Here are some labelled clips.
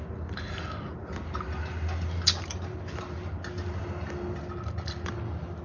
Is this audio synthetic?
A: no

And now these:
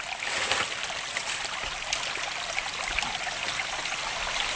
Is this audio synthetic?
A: no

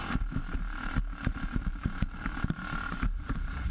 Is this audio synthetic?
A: yes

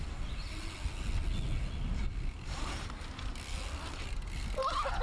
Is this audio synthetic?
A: no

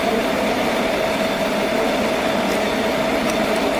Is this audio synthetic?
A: no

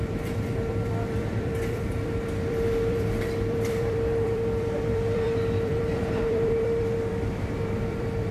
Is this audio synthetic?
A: yes